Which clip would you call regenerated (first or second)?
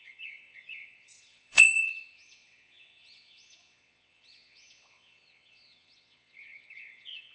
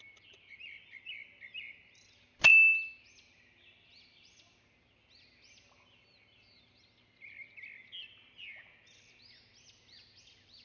first